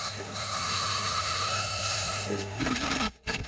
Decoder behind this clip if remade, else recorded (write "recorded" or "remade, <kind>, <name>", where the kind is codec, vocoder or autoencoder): remade, codec, SNAC